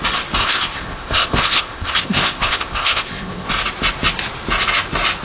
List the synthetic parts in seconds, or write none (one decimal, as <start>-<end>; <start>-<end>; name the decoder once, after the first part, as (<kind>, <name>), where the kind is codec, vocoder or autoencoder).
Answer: 0.4-3.5 (codec, ZipCodec)